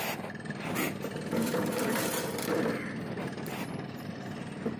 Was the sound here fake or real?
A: real